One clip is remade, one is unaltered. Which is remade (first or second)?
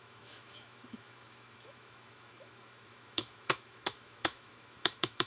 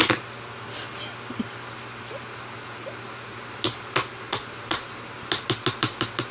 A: first